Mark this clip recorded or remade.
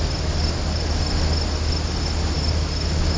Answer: recorded